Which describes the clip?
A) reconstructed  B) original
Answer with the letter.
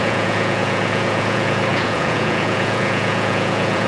A